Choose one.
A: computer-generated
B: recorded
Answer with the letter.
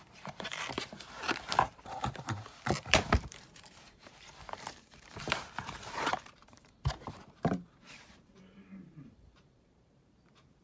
A